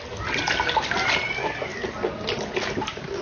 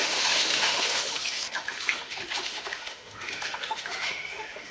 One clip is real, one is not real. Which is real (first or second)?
first